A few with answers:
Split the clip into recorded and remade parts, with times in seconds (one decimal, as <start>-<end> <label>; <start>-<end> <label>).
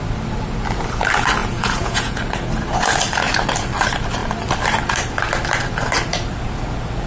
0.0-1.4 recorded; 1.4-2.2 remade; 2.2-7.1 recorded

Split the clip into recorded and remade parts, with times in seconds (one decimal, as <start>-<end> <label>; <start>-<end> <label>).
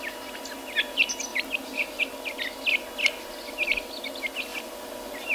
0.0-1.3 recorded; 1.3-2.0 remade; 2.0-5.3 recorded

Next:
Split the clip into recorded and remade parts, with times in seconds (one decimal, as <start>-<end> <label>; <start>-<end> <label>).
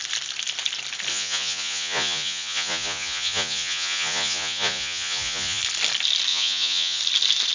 0.0-1.1 recorded; 1.1-5.6 remade; 5.6-6.3 recorded; 6.3-7.0 remade; 7.0-7.5 recorded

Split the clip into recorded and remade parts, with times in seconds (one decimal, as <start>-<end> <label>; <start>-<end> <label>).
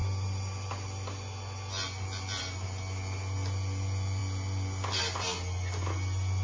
0.0-6.4 recorded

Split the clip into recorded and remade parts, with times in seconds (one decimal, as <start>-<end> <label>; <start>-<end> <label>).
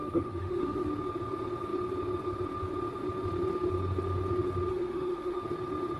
0.0-0.9 remade; 0.9-4.7 recorded; 4.7-5.4 remade; 5.4-6.0 recorded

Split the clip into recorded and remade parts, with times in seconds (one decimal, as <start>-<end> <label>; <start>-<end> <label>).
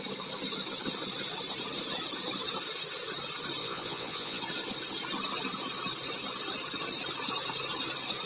0.0-3.6 recorded; 3.6-4.4 remade; 4.4-8.3 recorded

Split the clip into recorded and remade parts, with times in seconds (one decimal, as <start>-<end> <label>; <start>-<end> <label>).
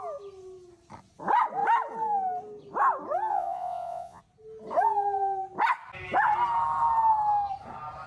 0.0-3.3 recorded; 3.3-4.2 remade; 4.2-8.1 recorded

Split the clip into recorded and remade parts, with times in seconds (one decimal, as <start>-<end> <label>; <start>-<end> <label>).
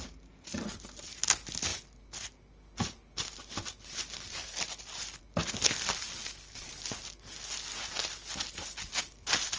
0.0-9.6 recorded